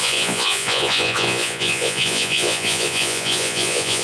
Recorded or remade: remade